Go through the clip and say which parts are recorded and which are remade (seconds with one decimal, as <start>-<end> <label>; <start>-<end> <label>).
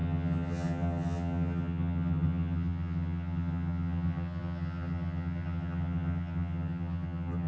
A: 0.0-7.5 remade